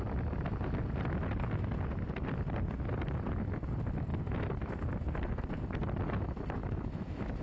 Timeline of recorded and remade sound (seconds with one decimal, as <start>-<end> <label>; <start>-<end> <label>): 0.0-6.6 recorded; 6.6-7.4 remade